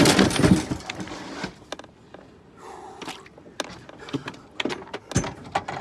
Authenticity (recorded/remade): recorded